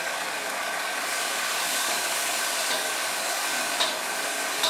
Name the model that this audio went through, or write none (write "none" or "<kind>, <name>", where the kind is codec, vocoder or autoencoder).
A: codec, DAC